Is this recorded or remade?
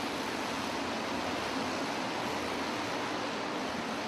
recorded